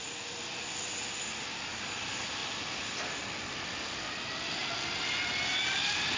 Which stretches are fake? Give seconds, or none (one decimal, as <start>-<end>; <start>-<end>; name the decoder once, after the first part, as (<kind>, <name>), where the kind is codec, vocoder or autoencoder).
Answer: none